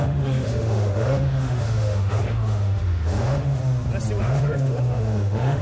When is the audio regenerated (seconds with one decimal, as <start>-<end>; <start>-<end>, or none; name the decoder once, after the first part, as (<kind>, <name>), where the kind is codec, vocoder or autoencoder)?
0.0-3.6 (autoencoder, DAC-VAE); 4.2-5.6